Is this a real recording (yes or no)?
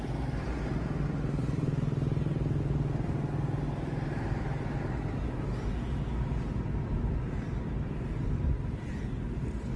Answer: yes